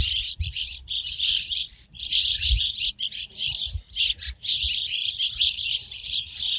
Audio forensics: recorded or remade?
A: remade